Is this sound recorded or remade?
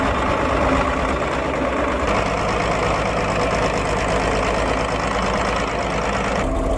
recorded